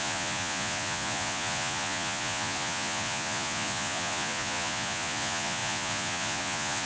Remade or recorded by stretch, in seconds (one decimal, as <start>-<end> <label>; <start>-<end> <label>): 0.0-6.9 remade